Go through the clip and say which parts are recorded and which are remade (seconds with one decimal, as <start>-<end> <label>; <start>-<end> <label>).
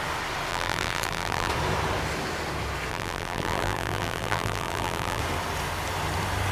0.0-0.5 recorded; 0.5-1.5 remade; 1.5-2.9 recorded; 2.9-5.2 remade; 5.2-6.5 recorded